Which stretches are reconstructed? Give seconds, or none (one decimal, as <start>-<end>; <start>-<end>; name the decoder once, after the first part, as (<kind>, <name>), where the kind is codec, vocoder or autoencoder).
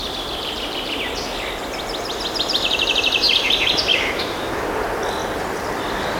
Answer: 3.9-4.7 (autoencoder, DAC-VAE)